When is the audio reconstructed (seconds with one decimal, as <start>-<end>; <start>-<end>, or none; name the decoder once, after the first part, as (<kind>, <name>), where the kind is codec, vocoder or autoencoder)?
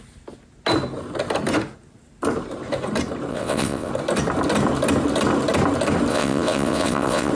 3.3-3.9 (vocoder, WaveNeXt); 6.1-7.3